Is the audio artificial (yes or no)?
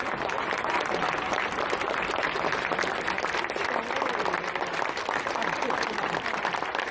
no